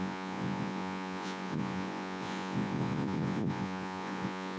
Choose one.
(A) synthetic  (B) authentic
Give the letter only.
A